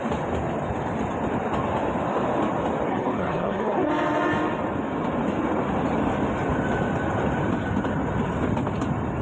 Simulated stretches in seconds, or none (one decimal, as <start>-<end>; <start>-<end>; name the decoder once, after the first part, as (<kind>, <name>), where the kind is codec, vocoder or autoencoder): 2.9-3.9 (codec, SNAC)